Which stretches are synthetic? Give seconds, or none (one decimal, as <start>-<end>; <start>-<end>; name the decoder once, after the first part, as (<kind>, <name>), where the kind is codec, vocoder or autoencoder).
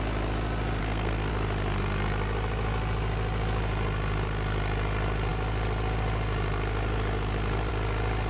0.8-1.3 (codec, SNAC)